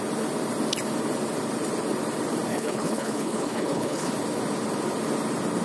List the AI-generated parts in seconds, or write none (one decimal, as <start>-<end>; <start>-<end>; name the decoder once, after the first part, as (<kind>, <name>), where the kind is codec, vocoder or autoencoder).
2.5-4.1 (codec, HILCodec)